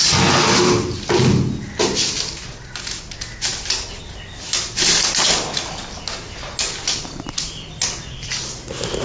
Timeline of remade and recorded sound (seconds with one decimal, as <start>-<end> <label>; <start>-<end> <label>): 0.0-9.0 recorded